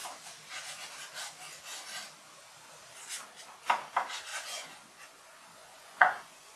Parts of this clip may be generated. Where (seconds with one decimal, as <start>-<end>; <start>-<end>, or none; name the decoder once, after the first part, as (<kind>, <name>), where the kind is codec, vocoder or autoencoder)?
4.3-6.6 (vocoder, Vocos)